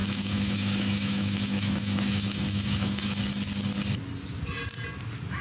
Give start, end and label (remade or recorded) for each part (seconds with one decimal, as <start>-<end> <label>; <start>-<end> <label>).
0.0-3.2 remade; 3.2-5.4 recorded